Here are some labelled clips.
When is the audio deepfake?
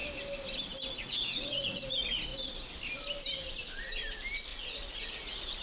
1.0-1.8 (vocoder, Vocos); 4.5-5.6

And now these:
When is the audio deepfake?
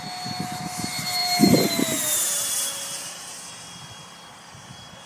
none